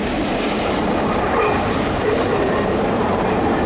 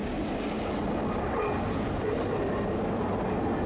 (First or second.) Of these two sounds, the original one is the second